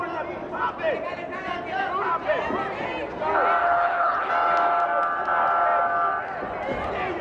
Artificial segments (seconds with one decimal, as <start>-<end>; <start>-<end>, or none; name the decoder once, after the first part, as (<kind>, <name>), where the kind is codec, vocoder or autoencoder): 3.6-4.3 (codec, HILCodec)